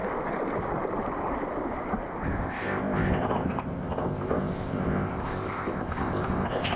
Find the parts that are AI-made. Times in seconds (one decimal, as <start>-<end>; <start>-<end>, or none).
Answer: 2.4-6.8